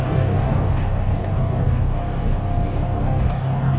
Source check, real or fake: fake